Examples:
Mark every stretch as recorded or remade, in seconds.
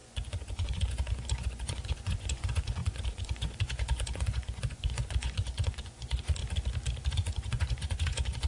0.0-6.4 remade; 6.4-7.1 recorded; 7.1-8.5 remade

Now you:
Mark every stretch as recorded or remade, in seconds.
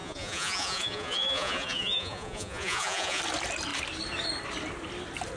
0.0-3.2 remade; 3.2-5.4 recorded